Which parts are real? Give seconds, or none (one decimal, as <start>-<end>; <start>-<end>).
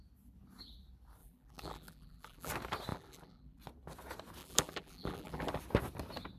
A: 0.0-1.2; 2.5-2.9; 3.6-4.4; 5.6-6.4